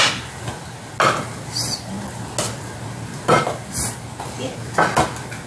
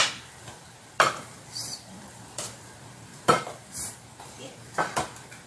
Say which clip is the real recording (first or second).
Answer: first